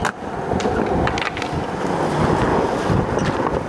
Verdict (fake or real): real